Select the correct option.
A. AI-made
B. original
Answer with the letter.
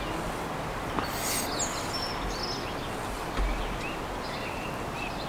B